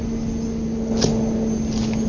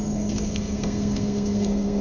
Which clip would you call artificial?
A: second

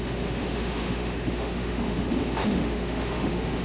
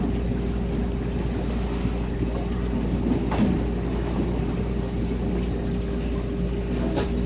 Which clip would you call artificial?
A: first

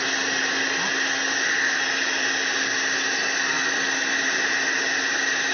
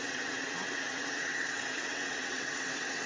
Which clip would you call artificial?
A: second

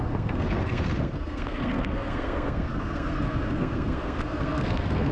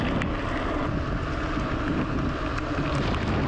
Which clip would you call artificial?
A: first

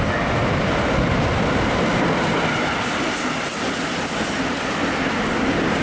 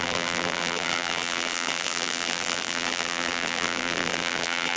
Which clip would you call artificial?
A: second